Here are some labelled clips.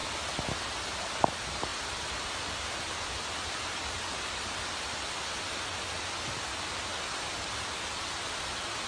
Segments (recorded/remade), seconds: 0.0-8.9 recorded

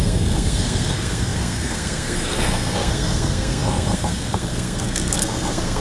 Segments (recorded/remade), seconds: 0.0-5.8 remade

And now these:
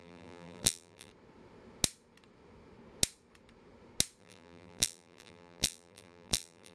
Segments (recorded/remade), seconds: 0.0-1.1 remade; 1.1-4.2 recorded; 4.2-6.7 remade

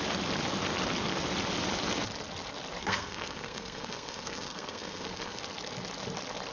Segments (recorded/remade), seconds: 0.0-2.8 recorded; 2.8-5.4 remade; 5.4-6.5 recorded

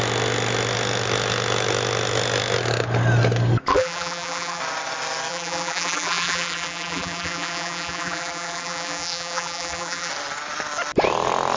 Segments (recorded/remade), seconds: 0.0-3.7 recorded; 3.7-4.6 remade; 4.6-5.3 recorded; 5.3-10.1 remade; 10.1-11.6 recorded

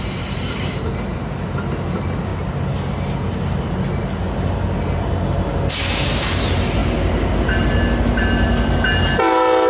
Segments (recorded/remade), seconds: 0.0-9.7 recorded

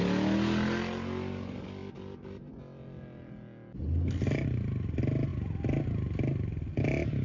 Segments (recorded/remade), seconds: 0.0-7.2 recorded

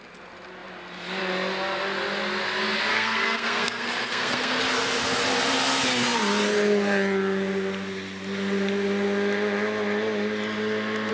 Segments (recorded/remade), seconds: 0.0-2.9 recorded; 2.9-4.6 remade; 4.6-11.1 recorded